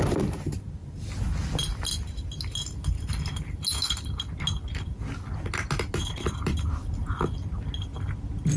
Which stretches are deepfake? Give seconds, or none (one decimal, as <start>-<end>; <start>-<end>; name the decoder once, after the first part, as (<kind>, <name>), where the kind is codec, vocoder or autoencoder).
none